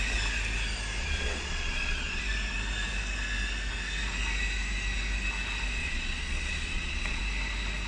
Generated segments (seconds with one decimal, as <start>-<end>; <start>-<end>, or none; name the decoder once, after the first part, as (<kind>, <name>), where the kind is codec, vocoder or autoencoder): 1.0-2.2 (vocoder, Vocos); 5.8-7.2